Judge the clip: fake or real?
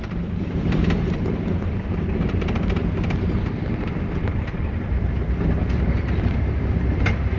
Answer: fake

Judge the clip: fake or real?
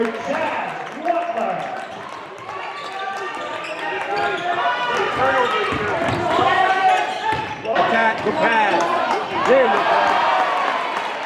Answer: fake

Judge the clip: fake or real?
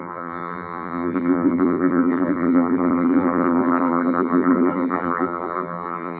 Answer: fake